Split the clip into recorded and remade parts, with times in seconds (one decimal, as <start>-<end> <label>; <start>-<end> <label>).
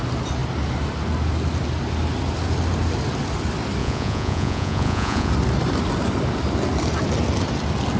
0.0-3.8 recorded; 3.8-5.3 remade; 5.3-8.0 recorded